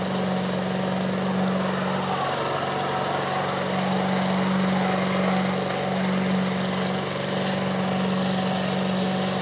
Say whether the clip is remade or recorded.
recorded